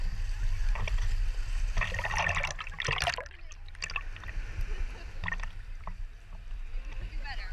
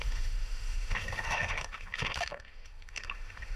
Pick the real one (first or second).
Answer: first